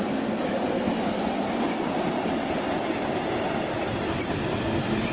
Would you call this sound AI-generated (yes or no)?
no